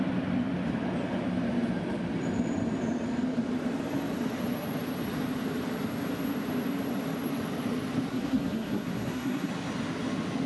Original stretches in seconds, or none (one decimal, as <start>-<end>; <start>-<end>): 0.0-8.1; 9.5-10.5